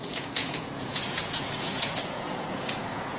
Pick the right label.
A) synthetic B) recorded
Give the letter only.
A